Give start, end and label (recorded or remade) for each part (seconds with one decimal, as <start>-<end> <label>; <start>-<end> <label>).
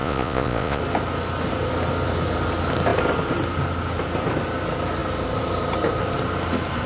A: 0.0-0.8 remade; 0.8-6.9 recorded